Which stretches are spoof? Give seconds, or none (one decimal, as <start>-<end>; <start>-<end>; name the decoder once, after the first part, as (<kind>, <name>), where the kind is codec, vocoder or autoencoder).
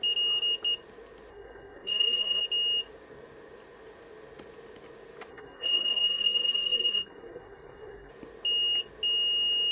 1.3-2.4 (codec, SNAC); 5.3-8.1